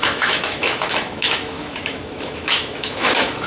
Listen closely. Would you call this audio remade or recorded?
remade